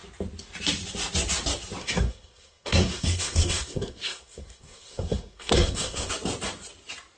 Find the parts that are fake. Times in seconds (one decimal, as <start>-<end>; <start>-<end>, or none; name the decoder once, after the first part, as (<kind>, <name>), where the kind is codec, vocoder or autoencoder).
1.8-6.1 (codec, SNAC)

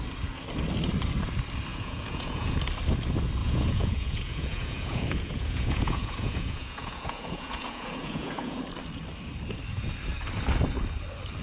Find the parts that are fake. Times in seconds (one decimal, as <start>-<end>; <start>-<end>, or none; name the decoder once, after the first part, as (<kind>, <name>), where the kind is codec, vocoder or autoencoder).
1.7-2.6 (vocoder, Vocos); 3.4-8.6

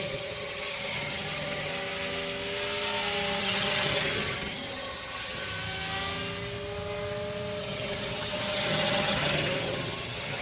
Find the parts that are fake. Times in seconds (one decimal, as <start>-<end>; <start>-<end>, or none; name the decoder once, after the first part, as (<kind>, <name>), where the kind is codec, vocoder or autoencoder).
0.0-1.7 (vocoder, HiFi-GAN); 3.4-5.5; 7.6-10.4